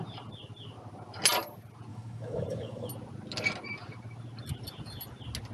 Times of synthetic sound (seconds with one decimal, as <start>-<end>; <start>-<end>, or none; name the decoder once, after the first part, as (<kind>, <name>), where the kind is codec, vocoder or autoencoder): 1.9-2.9 (autoencoder, DAC-VAE)